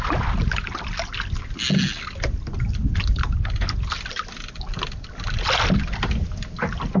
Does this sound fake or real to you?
real